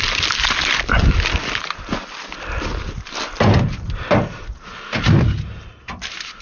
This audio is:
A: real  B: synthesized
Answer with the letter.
A